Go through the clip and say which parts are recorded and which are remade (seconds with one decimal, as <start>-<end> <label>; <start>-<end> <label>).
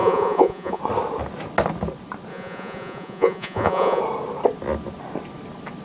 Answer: 0.0-0.8 remade; 0.8-2.3 recorded; 2.3-4.0 remade; 4.0-5.8 recorded